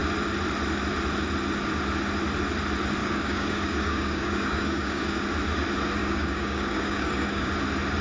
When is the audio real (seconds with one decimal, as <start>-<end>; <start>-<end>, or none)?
0.0-3.0; 5.2-6.0; 7.5-8.0